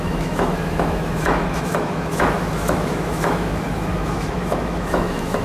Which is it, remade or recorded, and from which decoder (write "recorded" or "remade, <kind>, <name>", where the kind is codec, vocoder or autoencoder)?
remade, autoencoder, DAC-VAE